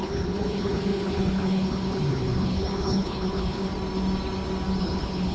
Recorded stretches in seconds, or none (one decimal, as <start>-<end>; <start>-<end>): 3.7-4.8